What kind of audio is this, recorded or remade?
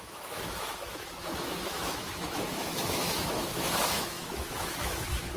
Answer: remade